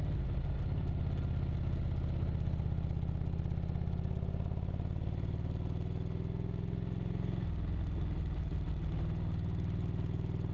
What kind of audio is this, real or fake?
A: real